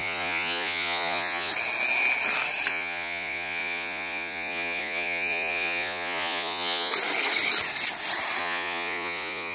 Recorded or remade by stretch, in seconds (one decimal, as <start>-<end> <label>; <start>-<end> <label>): 0.0-1.5 remade; 1.5-2.7 recorded; 2.7-6.9 remade; 6.9-8.4 recorded; 8.4-9.5 remade